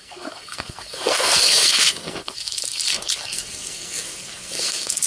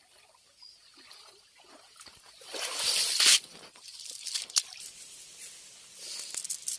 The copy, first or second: first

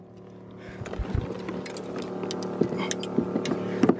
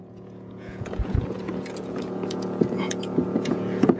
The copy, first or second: second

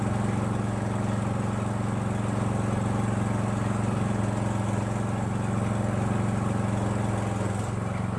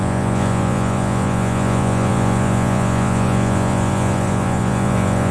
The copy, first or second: second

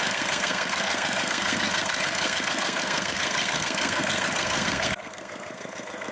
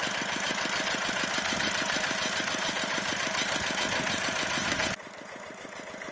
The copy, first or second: first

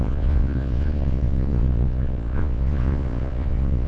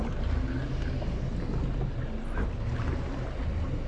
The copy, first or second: first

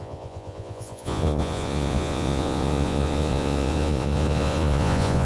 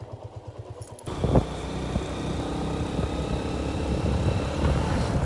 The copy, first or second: first